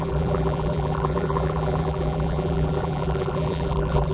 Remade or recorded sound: remade